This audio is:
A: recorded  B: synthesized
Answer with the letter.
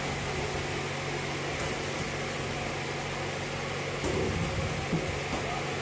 A